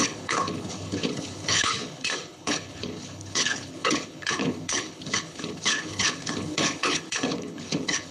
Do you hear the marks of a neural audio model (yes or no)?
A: yes